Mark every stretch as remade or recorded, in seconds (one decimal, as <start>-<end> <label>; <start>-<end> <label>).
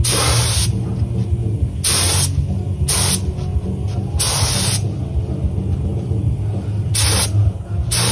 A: 0.0-8.1 recorded